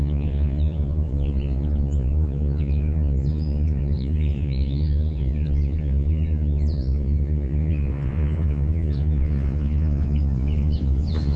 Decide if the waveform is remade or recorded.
remade